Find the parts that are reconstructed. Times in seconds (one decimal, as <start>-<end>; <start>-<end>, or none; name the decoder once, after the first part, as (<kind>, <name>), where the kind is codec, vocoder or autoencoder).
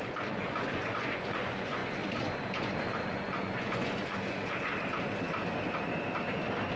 0.0-4.7 (vocoder, Vocos)